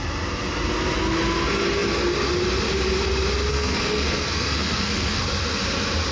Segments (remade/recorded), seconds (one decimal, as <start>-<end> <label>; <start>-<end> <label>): 0.0-3.5 recorded; 3.5-5.2 remade; 5.2-6.1 recorded